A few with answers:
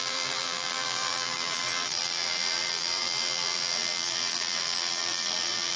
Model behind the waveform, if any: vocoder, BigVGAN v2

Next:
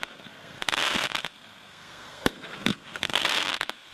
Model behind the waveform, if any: codec, SNAC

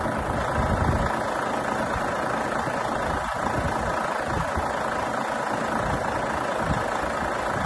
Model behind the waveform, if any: none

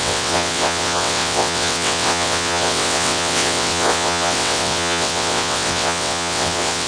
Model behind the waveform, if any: vocoder, WaveNeXt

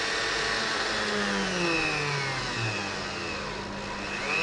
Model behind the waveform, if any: none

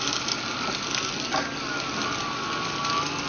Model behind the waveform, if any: none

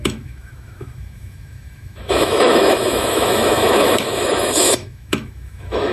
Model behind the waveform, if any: autoencoder, DAC-VAE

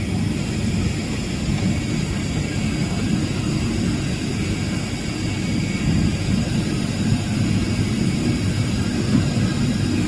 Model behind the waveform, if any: none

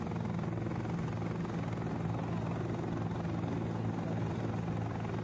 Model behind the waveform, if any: none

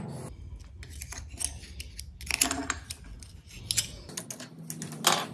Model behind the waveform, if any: none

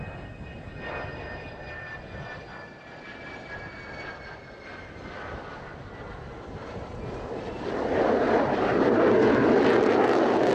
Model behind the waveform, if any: none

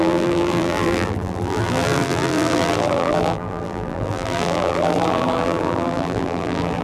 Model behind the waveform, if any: vocoder, BigVGAN v2